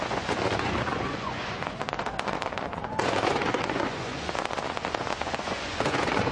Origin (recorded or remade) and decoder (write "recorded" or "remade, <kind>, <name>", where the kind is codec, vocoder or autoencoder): remade, vocoder, Vocos